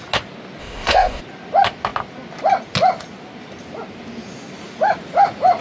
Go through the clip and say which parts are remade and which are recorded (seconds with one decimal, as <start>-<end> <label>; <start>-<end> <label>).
0.0-0.6 recorded; 0.6-1.2 remade; 1.2-5.6 recorded